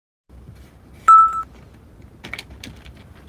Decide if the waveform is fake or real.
real